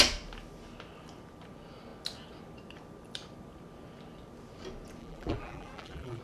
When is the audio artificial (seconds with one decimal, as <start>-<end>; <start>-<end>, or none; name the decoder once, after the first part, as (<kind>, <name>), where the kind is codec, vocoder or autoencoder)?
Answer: 5.0-6.2 (vocoder, BigVGAN v2)